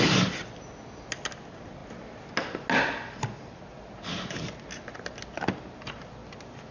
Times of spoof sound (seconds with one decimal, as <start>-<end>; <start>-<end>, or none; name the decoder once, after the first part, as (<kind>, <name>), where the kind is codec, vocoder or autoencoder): none